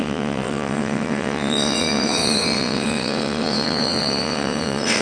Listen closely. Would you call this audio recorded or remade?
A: remade